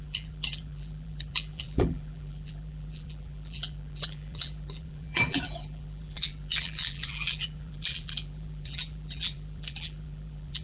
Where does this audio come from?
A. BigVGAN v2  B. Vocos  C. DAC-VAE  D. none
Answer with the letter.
A